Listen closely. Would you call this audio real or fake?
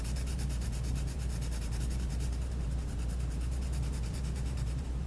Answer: fake